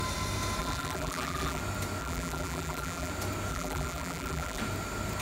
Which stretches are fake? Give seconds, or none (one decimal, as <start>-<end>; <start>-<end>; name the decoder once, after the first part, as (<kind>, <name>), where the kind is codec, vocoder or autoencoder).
0.6-1.6 (vocoder, BigVGAN v2); 2.0-3.1; 3.5-4.6